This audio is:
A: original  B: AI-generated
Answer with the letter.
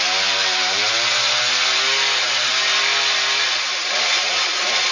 A